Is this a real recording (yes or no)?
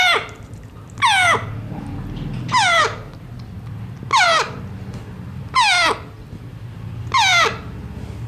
yes